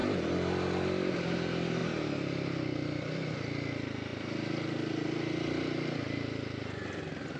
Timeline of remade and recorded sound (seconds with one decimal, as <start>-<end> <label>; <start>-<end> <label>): 0.0-7.4 recorded